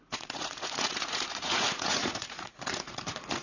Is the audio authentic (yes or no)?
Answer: no